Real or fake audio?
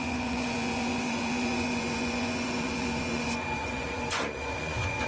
fake